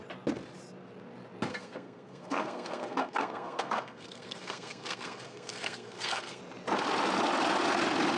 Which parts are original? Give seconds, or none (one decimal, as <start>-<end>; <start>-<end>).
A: 0.0-1.5; 6.4-8.2